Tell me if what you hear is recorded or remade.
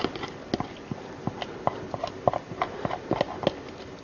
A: recorded